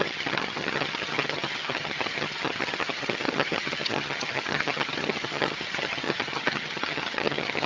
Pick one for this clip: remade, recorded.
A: remade